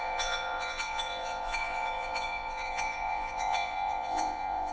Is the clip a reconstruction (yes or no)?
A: yes